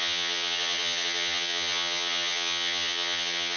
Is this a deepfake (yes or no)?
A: yes